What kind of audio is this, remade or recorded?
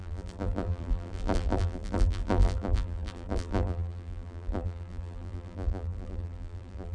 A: remade